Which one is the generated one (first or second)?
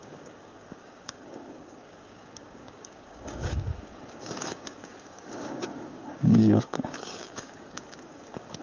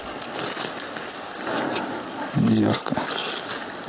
first